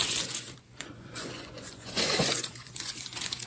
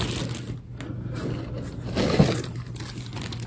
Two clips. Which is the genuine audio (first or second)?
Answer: second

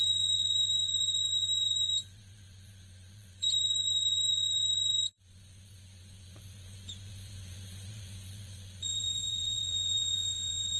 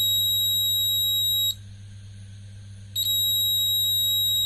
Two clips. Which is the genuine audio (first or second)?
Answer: second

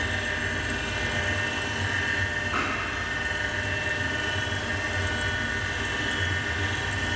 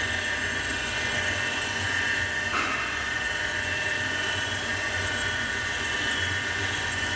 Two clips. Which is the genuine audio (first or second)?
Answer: first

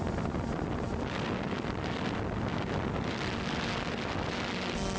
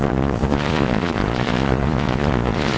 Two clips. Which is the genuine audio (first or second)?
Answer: first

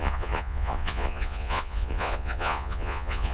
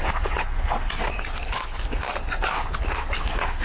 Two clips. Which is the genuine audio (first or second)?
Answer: second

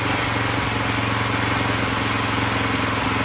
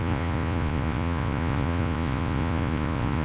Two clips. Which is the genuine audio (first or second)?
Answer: first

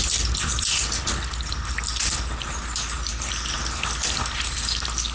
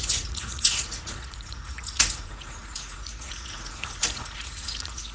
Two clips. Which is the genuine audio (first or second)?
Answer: first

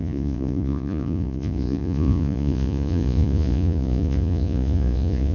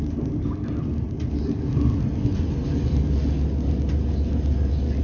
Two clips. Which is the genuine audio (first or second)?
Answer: second